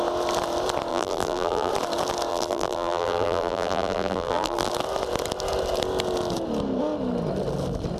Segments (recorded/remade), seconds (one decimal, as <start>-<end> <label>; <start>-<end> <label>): 0.0-0.9 recorded; 0.9-1.7 remade; 1.7-2.3 recorded; 2.3-4.7 remade; 4.7-8.0 recorded